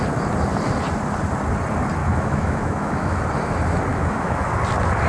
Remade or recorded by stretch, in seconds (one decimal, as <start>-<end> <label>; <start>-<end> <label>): 0.0-2.0 recorded; 2.0-3.2 remade; 3.2-3.9 recorded; 3.9-4.5 remade; 4.5-5.1 recorded